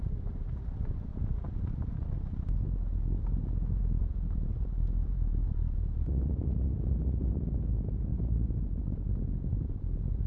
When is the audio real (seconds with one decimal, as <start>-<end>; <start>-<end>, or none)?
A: 1.1-4.0